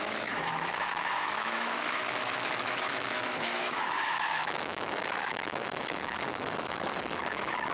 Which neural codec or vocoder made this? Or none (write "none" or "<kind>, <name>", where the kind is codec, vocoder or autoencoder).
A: autoencoder, DAC-VAE